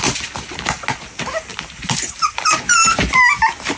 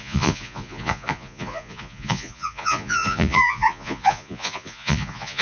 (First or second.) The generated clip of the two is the second